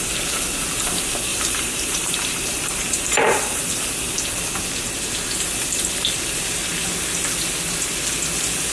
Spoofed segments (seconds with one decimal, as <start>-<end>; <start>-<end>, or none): 1.3-3.6